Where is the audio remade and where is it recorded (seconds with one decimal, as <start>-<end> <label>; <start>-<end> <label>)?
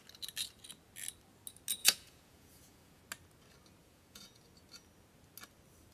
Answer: 0.0-1.8 recorded; 1.8-3.0 remade; 3.0-3.8 recorded; 3.8-4.4 remade; 4.4-5.9 recorded